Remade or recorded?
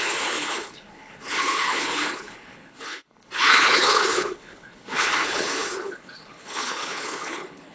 remade